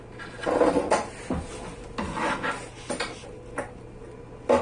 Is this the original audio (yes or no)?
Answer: yes